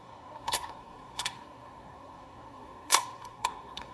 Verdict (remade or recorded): remade